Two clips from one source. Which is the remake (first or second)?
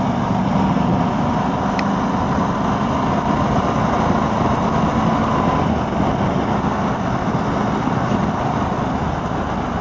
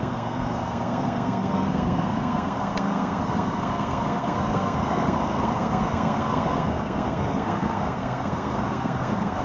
second